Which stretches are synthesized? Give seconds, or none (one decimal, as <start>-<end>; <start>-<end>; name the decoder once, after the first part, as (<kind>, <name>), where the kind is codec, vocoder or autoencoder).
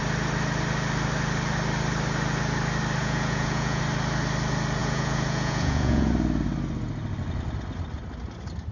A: 3.0-3.8 (vocoder, Vocos); 4.8-6.1